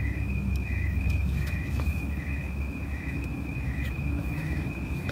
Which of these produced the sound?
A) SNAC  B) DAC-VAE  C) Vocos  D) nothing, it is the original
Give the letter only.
B